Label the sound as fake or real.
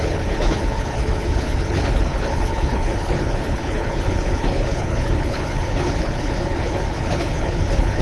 fake